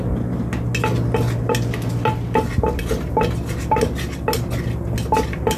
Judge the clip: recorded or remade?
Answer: recorded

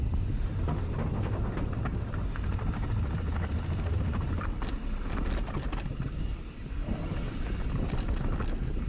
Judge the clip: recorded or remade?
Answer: recorded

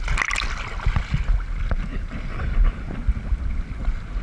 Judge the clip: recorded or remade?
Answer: recorded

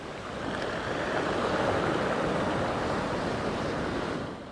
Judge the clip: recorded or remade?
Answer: recorded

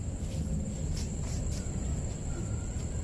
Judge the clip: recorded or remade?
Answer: recorded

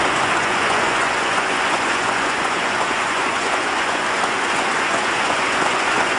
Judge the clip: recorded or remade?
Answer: remade